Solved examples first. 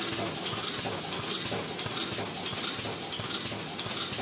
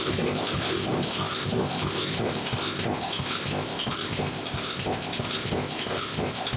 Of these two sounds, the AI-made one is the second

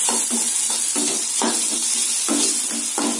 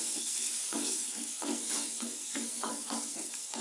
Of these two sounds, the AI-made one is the second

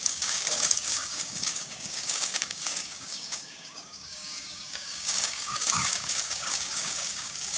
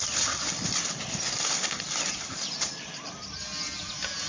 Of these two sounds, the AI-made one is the first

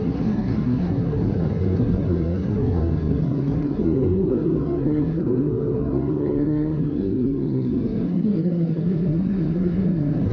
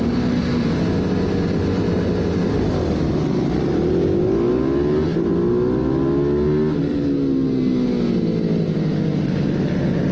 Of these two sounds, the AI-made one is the first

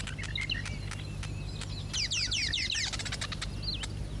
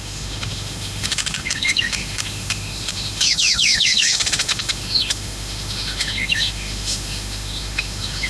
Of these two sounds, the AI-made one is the second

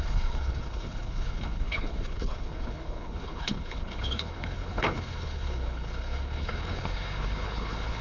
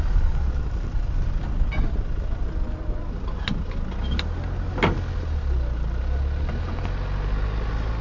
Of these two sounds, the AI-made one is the first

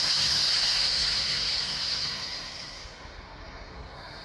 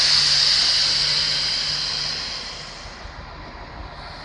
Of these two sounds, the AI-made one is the first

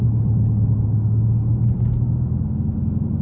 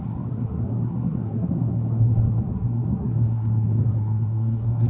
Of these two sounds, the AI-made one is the second